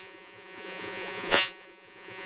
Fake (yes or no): yes